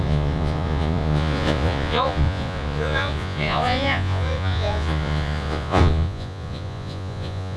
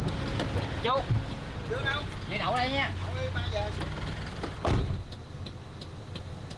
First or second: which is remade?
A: first